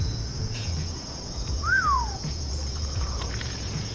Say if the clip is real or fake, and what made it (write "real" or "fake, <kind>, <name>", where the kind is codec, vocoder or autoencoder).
fake, vocoder, Vocos